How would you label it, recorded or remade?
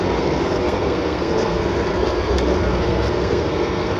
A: remade